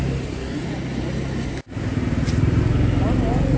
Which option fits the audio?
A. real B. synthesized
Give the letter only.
A